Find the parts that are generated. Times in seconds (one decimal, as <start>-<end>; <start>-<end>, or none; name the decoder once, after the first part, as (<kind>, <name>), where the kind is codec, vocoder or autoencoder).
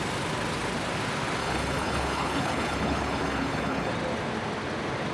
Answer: 1.4-3.9 (codec, HILCodec)